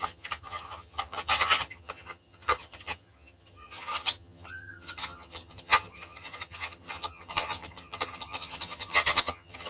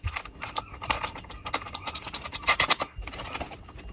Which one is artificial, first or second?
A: first